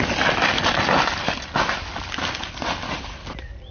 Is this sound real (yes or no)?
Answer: yes